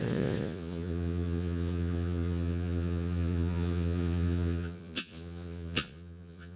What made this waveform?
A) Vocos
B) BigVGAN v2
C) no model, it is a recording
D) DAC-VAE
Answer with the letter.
A